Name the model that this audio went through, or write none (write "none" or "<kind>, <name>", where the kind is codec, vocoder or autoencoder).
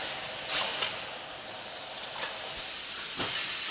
none